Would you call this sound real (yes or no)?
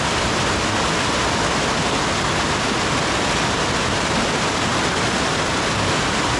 yes